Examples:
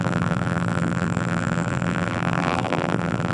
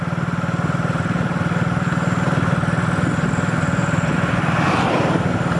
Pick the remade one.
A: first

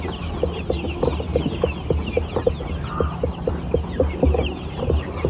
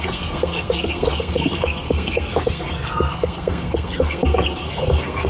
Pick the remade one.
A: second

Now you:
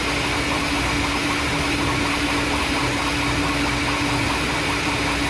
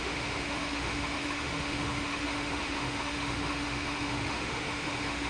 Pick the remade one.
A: second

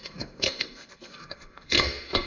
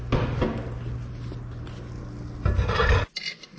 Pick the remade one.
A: first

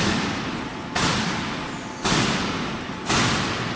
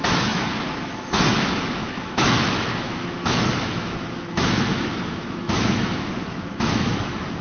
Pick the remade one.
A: second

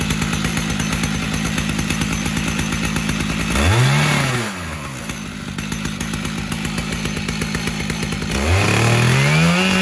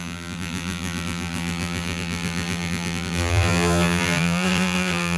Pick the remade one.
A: second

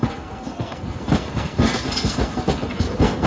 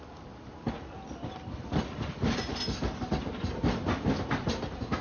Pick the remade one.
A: first